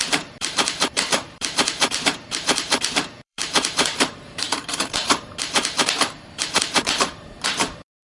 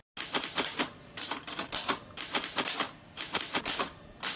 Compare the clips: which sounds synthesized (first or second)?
first